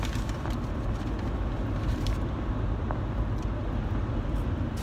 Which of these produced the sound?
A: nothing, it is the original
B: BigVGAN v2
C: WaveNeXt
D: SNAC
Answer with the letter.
A